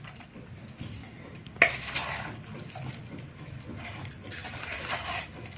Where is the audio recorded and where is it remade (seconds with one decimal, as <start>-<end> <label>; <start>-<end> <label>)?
0.0-5.6 recorded